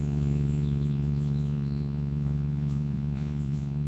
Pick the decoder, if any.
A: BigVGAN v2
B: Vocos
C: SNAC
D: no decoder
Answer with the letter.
B